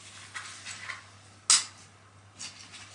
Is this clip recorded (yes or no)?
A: yes